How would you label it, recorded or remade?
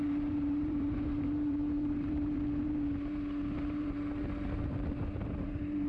remade